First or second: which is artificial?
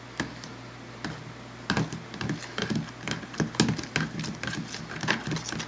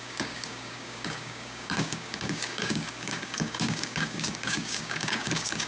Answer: second